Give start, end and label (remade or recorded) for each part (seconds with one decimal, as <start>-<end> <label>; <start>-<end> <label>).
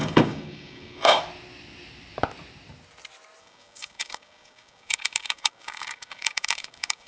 0.0-1.2 remade; 1.2-3.4 recorded; 3.4-7.1 remade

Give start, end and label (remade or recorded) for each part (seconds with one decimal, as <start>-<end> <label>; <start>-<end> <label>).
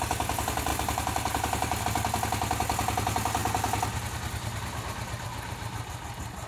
0.0-0.7 recorded; 0.7-1.8 remade; 1.8-6.5 recorded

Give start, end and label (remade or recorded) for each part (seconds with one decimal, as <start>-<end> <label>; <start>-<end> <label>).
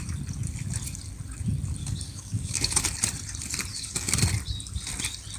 0.0-1.8 recorded; 1.8-2.8 remade; 2.8-3.7 recorded; 3.7-4.2 remade; 4.2-5.4 recorded